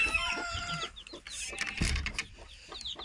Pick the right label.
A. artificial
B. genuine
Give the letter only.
B